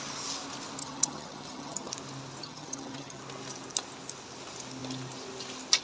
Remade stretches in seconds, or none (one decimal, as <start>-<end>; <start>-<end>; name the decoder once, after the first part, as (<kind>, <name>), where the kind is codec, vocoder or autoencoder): 0.8-1.9 (vocoder, HiFi-GAN); 2.4-3.2